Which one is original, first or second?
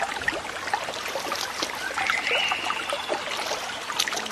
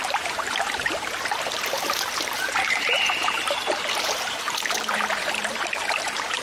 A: first